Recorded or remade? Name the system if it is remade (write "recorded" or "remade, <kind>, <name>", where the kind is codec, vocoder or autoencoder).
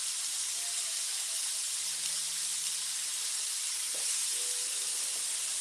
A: recorded